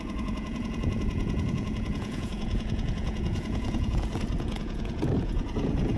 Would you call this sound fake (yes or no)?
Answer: yes